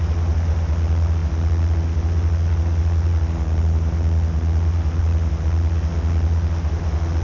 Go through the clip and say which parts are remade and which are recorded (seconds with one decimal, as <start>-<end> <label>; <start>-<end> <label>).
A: 0.0-7.2 recorded